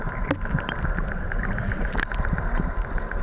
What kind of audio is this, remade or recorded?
recorded